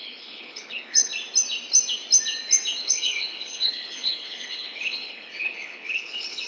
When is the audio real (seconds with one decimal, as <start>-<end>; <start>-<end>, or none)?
1.1-2.8